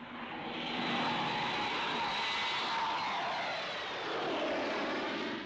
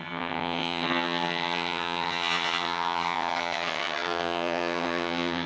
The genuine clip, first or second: first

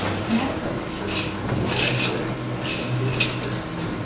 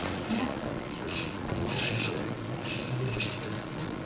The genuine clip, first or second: first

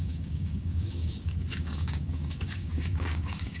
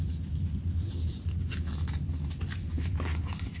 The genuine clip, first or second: second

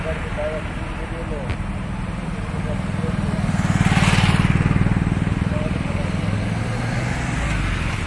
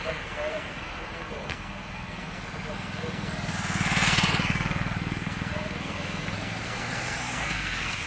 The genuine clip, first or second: first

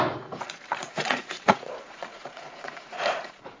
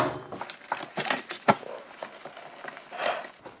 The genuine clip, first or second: second